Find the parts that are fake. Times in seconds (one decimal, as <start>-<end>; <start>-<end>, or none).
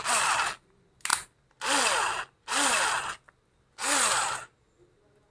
none